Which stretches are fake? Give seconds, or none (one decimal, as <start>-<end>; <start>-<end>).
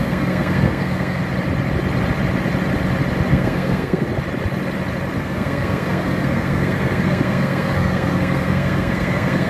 0.0-1.2; 3.3-4.1; 5.2-9.5